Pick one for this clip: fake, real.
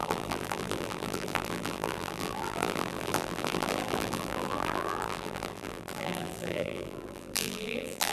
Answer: fake